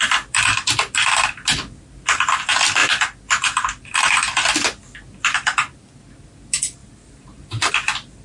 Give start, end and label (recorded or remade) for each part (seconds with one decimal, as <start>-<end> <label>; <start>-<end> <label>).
0.0-6.8 recorded; 6.8-7.7 remade; 7.7-8.2 recorded

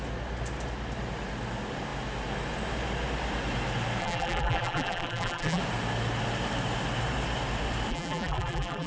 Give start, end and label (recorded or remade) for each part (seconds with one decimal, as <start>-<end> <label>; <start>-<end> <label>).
0.0-4.0 recorded; 4.0-5.6 remade; 5.6-7.9 recorded; 7.9-8.9 remade

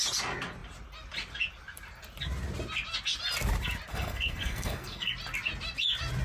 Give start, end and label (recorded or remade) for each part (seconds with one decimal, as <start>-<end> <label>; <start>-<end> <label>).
0.0-3.9 recorded; 3.9-5.1 remade; 5.1-6.2 recorded

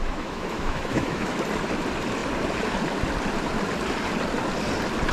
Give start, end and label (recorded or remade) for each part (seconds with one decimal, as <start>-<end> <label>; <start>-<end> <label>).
0.0-1.4 remade; 1.4-5.1 recorded

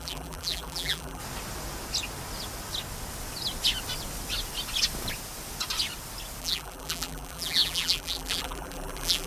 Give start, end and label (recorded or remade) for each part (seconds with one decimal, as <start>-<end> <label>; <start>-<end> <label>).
0.0-1.2 remade; 1.2-6.4 recorded; 6.4-9.3 remade

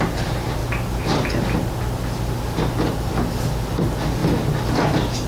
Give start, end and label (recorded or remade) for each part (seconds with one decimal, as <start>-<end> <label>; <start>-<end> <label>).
0.0-5.3 recorded